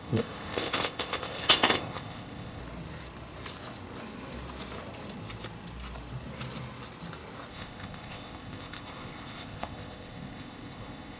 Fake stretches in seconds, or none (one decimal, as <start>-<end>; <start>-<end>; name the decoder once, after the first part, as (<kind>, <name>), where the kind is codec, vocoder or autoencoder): 0.0-2.6 (codec, ZipCodec); 7.5-11.2